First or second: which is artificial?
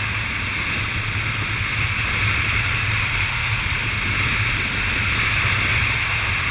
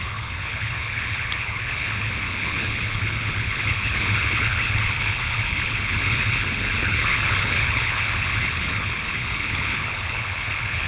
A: second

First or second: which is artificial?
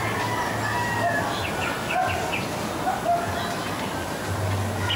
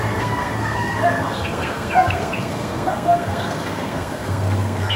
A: second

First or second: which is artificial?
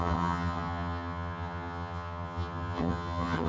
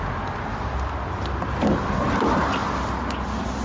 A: first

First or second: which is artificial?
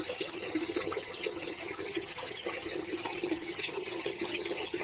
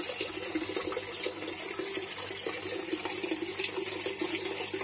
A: first